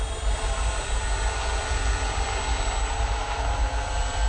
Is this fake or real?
real